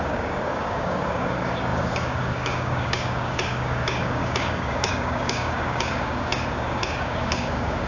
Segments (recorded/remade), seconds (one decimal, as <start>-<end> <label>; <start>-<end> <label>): 0.0-7.9 remade